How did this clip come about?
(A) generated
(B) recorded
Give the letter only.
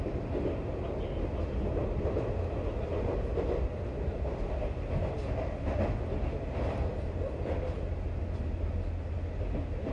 B